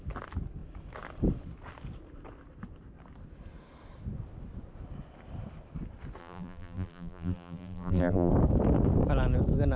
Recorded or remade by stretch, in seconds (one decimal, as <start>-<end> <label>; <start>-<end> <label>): 0.0-6.2 recorded; 6.2-8.3 remade; 8.3-9.8 recorded